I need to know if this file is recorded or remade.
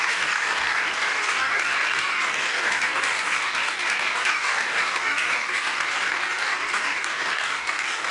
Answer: remade